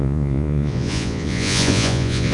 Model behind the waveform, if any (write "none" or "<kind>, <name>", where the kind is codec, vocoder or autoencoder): vocoder, Vocos